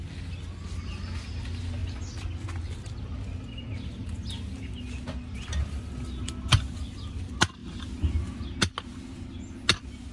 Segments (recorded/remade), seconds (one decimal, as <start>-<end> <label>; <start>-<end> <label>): 0.0-10.1 recorded